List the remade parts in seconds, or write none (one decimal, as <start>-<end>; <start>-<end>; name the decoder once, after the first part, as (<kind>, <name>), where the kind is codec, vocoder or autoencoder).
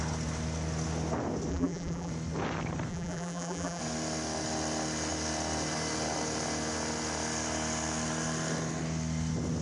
1.5-2.1 (vocoder, BigVGAN v2); 2.9-3.8